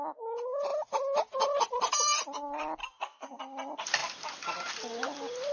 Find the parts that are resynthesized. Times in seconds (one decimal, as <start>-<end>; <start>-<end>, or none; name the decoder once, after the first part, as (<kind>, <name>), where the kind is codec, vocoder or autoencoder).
2.8-3.4 (codec, SNAC)